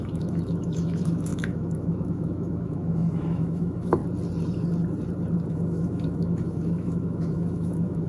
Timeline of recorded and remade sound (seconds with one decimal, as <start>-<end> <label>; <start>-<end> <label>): 0.0-4.0 remade; 4.0-5.5 recorded; 5.5-8.1 remade